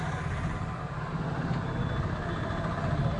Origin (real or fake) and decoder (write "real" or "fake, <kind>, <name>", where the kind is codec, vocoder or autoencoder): real